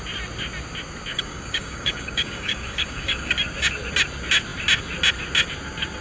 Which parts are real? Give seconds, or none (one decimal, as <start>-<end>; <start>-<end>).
0.0-1.1; 3.3-6.0